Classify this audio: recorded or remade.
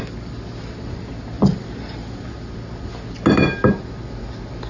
recorded